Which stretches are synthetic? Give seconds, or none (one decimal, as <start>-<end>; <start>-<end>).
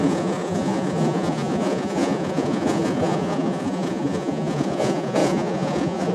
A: 0.0-6.1